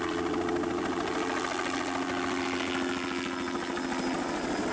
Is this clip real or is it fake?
real